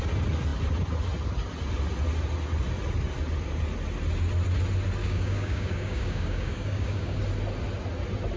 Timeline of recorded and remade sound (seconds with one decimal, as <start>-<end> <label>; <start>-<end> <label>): 0.0-5.0 recorded; 5.0-7.2 remade; 7.2-8.4 recorded